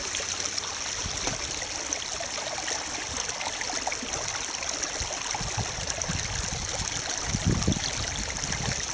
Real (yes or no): yes